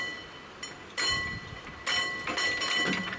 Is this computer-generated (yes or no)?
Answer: no